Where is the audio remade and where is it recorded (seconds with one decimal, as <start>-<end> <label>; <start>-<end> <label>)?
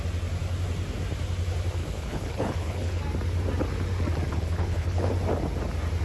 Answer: 0.0-1.8 recorded; 1.8-3.0 remade; 3.0-4.3 recorded; 4.3-5.1 remade; 5.1-6.0 recorded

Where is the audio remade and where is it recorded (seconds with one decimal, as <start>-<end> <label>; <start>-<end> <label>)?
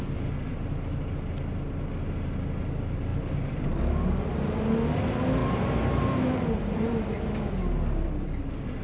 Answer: 0.0-3.1 recorded; 3.1-3.8 remade; 3.8-5.4 recorded; 5.4-6.9 remade; 6.9-8.8 recorded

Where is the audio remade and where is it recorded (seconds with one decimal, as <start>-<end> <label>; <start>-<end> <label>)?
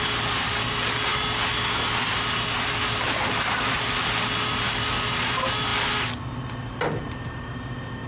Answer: 0.0-8.1 recorded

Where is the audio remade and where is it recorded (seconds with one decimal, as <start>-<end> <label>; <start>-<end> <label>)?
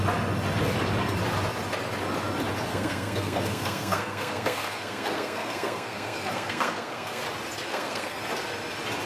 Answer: 0.0-2.7 recorded; 2.7-7.2 remade; 7.2-7.7 recorded; 7.7-8.2 remade; 8.2-9.1 recorded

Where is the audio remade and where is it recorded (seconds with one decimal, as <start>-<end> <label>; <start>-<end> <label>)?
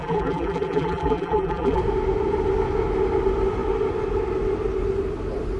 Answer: 0.0-1.8 remade; 1.8-5.6 recorded